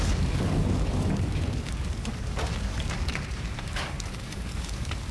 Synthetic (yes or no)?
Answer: yes